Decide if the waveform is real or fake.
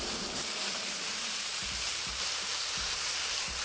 fake